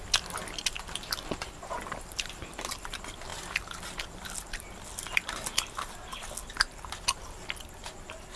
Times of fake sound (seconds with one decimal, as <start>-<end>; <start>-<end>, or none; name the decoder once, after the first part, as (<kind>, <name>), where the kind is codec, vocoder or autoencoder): none